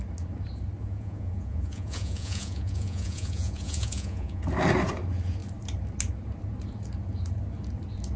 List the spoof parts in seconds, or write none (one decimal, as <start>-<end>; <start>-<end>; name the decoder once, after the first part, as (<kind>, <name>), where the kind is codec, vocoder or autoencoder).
0.8-4.4 (vocoder, Vocos)